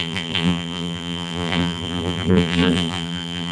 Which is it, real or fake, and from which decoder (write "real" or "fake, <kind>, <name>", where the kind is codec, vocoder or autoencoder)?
fake, vocoder, BigVGAN v2